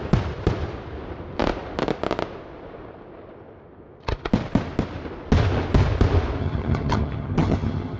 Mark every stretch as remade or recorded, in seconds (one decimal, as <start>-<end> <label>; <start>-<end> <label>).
0.0-6.4 recorded; 6.4-8.0 remade